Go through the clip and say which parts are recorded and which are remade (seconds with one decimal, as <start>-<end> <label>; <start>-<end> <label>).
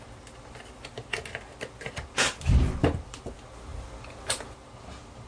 0.0-5.3 recorded